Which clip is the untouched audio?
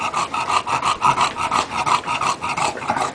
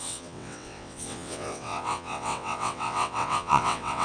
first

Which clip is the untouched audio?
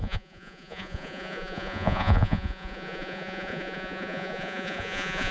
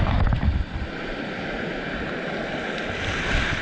second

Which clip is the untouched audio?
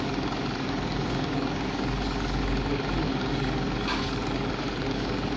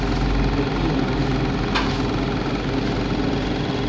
second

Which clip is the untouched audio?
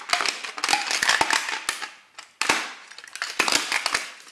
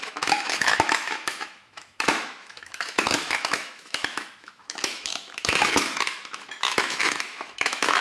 first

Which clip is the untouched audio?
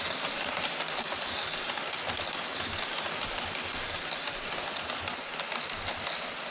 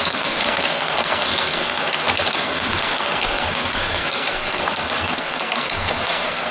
first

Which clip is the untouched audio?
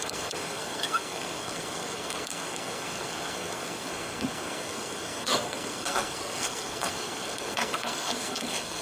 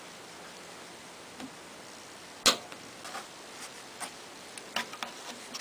second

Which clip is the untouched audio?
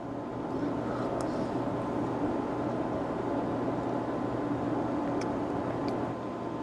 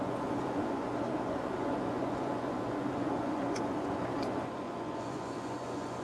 first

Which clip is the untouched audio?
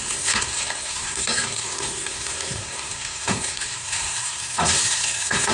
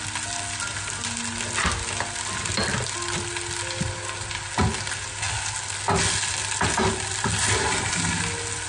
second